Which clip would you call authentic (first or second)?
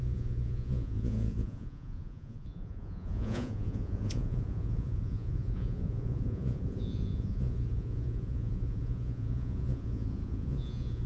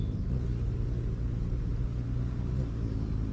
second